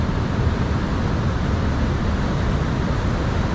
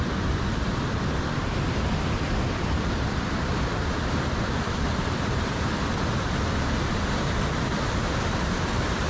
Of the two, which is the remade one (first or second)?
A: second